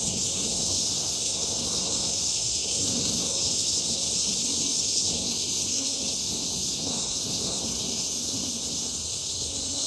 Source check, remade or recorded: remade